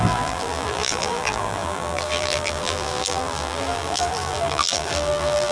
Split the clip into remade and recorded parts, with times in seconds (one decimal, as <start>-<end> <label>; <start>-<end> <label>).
0.0-5.5 remade